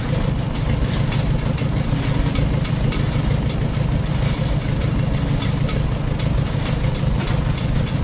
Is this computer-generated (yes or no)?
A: no